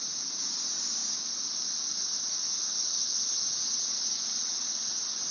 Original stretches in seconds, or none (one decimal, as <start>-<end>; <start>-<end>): 0.0-5.3